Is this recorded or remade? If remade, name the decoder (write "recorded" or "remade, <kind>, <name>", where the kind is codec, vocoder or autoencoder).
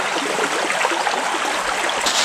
recorded